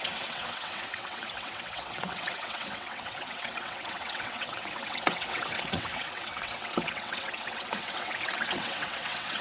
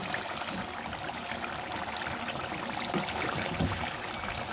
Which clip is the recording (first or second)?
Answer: second